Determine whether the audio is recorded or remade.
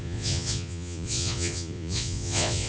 remade